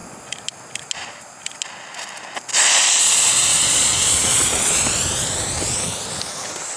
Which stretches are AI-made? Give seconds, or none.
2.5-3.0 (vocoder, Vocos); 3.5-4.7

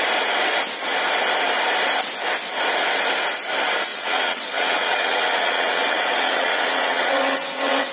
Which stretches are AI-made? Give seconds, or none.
3.9-7.9 (vocoder, WaveNeXt)

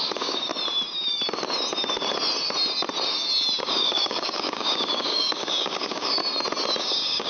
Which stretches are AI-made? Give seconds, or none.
0.0-0.5 (codec, DAC); 3.6-6.2; 6.8-7.3

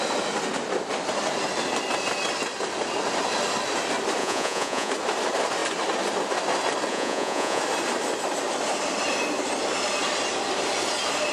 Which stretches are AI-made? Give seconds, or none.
4.2-4.9 (vocoder, Vocos); 6.9-7.6